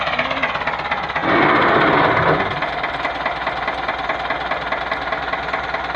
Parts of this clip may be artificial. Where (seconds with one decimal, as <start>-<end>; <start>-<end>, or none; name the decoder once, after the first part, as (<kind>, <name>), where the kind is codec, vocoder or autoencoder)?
none